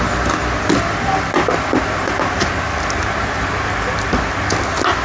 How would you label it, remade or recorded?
recorded